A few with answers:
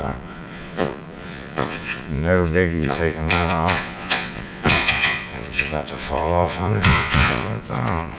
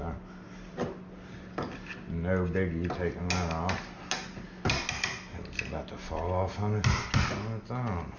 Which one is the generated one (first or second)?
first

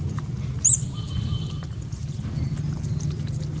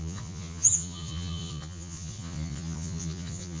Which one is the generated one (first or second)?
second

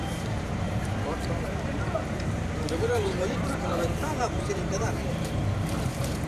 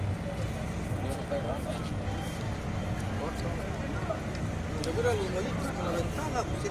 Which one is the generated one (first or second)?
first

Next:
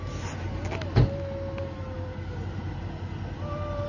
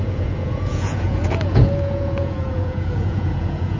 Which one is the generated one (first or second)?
second